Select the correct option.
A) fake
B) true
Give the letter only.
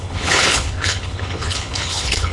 A